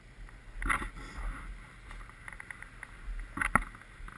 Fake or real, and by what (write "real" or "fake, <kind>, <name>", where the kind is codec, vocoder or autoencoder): real